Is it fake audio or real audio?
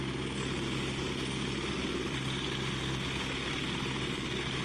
real